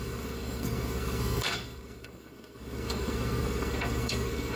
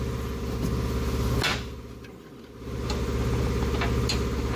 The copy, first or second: first